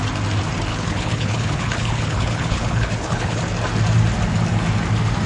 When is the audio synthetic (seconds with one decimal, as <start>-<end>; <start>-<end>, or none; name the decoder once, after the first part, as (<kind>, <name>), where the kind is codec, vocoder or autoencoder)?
0.7-3.4 (codec, HILCodec)